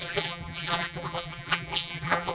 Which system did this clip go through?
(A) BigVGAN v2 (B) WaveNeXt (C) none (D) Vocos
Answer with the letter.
A